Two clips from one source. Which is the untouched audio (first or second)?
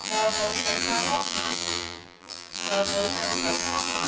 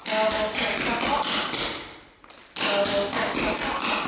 second